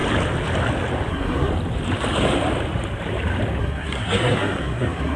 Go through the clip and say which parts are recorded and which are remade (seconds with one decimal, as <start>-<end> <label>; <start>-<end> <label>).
0.0-1.1 recorded; 1.1-1.5 remade; 1.5-3.6 recorded; 3.6-5.2 remade